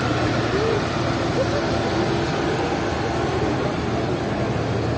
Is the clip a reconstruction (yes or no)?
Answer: no